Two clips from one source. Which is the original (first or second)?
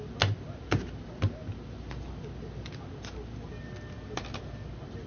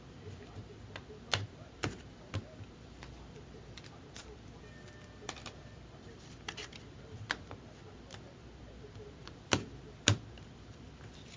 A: first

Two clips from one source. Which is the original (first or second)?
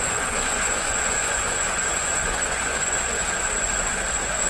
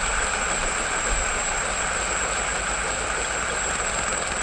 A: second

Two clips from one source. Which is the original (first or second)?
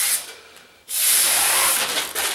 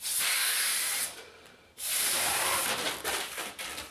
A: first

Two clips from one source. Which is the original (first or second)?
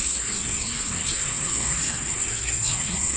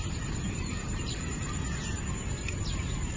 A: second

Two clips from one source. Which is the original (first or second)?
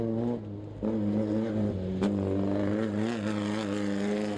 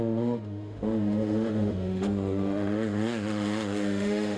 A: first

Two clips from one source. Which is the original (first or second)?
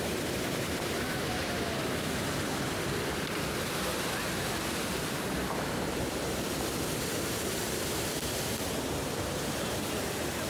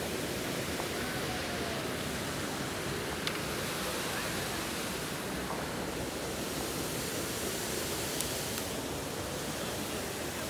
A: second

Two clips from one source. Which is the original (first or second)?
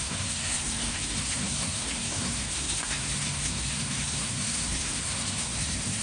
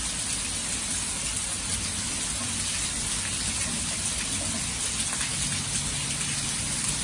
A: second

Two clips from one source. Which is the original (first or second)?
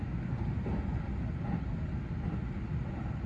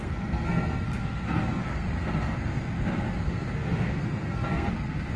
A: first